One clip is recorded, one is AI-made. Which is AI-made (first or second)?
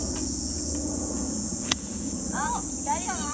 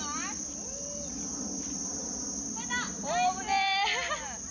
first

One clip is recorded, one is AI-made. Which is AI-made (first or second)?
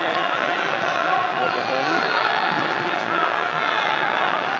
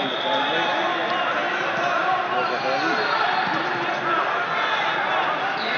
first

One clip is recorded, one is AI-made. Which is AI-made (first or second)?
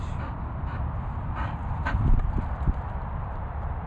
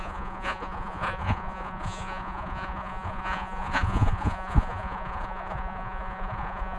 second